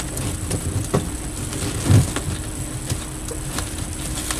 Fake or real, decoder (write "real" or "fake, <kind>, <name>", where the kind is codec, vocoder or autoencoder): real